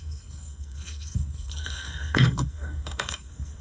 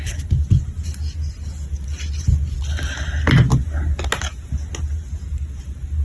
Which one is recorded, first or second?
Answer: second